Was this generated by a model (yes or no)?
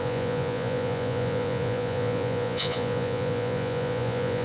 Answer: yes